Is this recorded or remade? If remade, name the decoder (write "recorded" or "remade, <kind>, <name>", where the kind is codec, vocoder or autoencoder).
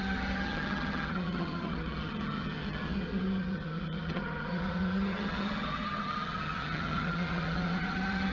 remade, vocoder, HiFi-GAN